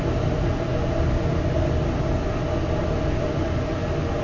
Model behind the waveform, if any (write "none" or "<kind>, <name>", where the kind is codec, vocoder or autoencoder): none